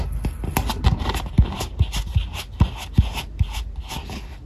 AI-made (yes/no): no